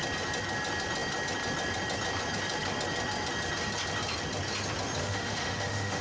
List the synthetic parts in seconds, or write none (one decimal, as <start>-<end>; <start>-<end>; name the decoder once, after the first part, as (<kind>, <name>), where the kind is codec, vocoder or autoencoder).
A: 5.0-6.0 (autoencoder, DAC-VAE)